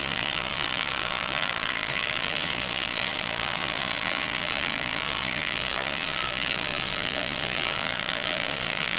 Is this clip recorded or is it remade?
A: remade